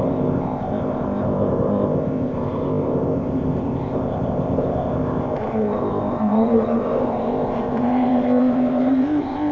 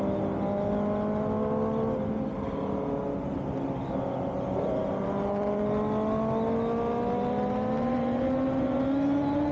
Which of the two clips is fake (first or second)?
first